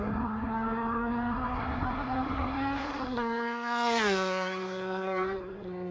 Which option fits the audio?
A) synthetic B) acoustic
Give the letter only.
A